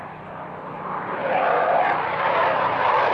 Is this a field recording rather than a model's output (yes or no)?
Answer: yes